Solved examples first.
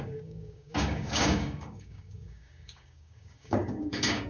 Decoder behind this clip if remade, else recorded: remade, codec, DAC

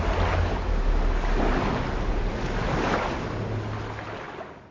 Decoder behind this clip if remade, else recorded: recorded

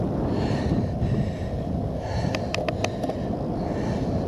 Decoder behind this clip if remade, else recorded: recorded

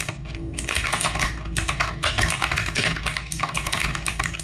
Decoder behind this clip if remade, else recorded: remade, codec, DAC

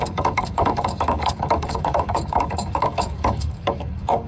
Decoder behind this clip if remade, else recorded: remade, codec, DAC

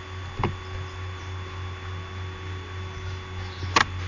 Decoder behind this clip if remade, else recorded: recorded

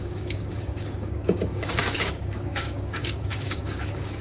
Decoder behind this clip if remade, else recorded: remade, codec, DAC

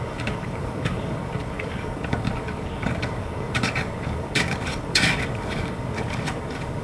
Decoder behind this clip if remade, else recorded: remade, codec, DAC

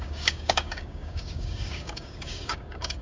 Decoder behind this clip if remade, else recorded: remade, codec, DAC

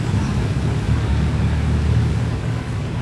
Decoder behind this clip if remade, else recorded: remade, codec, DAC